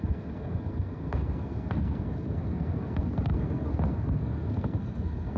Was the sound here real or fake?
fake